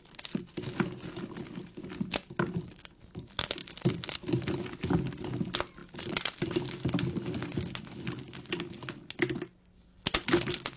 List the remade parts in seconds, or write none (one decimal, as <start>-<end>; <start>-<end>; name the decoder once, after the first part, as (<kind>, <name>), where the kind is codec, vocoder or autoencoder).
none